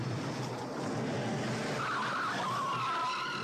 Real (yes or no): yes